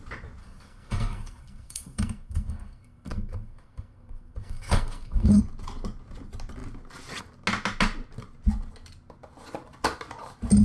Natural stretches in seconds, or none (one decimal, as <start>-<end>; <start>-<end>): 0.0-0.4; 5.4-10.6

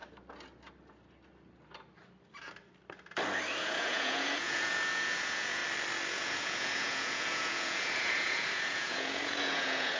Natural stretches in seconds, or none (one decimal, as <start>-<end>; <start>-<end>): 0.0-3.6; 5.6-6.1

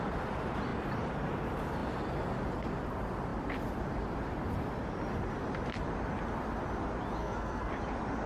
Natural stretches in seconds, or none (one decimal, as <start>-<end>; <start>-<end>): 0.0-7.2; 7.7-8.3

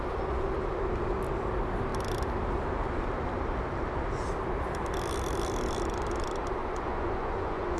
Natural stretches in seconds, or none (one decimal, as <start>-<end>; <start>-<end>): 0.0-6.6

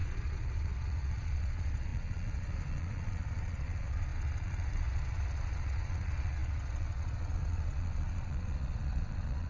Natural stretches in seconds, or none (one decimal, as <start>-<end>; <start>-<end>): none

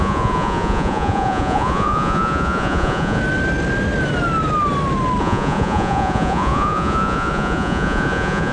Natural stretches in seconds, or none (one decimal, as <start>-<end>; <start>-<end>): 3.2-5.2

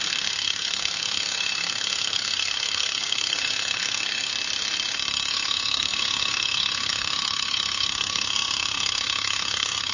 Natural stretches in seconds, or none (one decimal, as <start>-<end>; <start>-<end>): 4.3-5.3